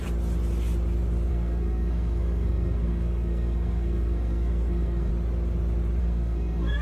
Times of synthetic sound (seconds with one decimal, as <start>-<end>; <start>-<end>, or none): 1.3-5.1; 6.0-6.8